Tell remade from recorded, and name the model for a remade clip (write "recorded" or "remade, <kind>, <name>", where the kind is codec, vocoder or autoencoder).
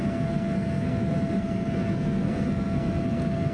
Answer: remade, codec, SNAC